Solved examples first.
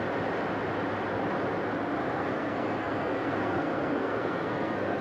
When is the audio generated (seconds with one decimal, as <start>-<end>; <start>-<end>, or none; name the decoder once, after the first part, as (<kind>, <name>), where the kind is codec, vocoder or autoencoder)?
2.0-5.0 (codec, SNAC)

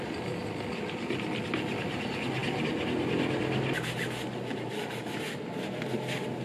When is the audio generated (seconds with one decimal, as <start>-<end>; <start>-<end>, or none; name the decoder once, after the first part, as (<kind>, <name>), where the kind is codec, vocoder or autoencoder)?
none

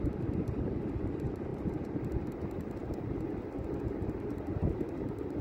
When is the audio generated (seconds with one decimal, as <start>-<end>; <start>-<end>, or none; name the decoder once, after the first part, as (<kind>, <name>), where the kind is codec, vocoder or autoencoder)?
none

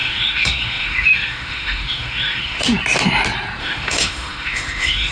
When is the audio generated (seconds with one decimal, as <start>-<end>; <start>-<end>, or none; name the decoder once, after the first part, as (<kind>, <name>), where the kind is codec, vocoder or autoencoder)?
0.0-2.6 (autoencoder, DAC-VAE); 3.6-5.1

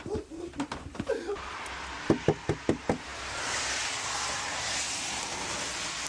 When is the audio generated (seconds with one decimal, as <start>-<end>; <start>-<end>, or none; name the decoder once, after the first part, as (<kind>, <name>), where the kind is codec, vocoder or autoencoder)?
none

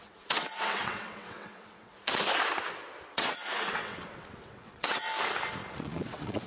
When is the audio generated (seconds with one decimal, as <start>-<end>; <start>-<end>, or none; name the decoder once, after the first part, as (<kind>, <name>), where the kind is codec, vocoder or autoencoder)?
0.0-1.9 (vocoder, WaveNeXt); 3.1-5.1; 5.7-6.5

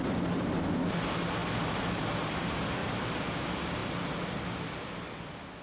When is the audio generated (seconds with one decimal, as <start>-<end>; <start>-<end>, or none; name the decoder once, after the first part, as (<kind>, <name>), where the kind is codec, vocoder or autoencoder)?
2.8-3.3 (vocoder, BigVGAN v2)

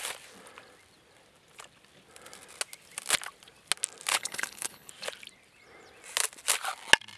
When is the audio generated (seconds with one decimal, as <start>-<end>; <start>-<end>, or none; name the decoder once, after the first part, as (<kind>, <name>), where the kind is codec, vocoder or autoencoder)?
4.1-4.9 (codec, HILCodec)